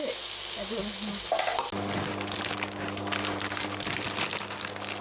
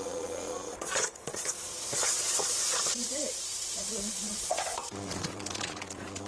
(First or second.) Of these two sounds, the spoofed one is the second